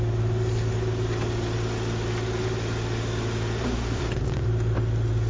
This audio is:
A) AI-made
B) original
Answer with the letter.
B